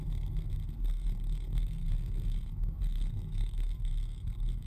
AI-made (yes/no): yes